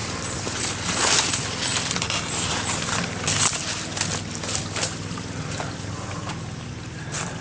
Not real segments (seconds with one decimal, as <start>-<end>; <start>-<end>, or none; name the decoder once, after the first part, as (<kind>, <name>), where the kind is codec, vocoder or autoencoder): none